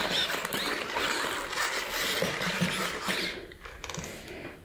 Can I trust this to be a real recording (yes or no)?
yes